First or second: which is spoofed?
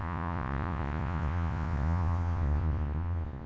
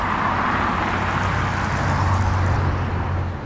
first